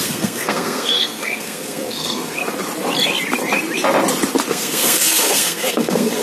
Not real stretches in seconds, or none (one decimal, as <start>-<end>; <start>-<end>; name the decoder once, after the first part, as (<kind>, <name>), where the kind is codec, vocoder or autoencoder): 0.0-2.4 (codec, SNAC); 4.5-6.2